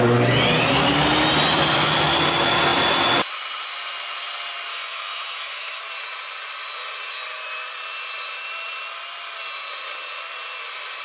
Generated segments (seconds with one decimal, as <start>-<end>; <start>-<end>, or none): 4.7-5.8